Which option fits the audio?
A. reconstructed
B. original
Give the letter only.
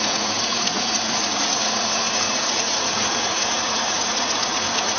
A